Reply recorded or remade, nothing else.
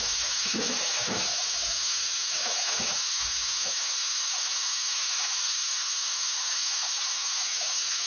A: remade